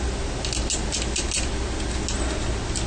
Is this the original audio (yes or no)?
yes